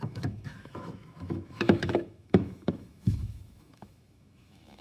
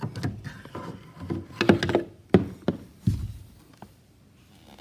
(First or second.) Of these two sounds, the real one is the second